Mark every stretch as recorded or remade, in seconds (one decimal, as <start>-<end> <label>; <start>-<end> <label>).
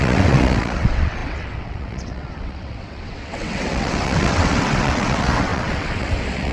0.0-6.5 remade